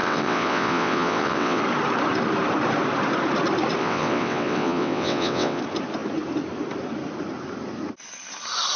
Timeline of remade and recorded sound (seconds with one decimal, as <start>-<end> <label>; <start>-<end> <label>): 0.0-1.6 remade; 1.6-3.8 recorded; 3.8-5.6 remade; 5.6-8.8 recorded